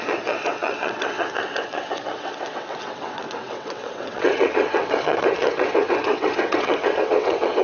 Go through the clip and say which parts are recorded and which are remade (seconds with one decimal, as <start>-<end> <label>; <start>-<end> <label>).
0.0-7.6 remade